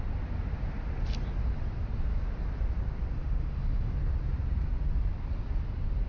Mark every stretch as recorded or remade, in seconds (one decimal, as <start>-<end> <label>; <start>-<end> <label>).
0.0-3.2 recorded; 3.2-3.9 remade; 3.9-6.1 recorded